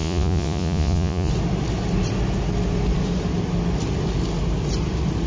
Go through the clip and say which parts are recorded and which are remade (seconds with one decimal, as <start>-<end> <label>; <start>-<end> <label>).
0.0-1.3 remade; 1.3-5.3 recorded